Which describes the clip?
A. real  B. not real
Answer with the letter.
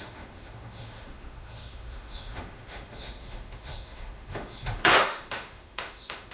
B